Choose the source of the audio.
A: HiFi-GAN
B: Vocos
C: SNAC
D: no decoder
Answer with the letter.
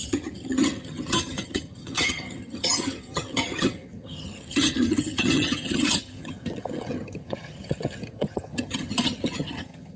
A